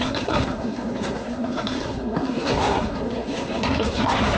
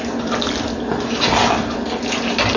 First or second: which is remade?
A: first